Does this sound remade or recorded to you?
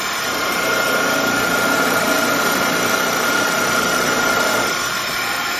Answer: remade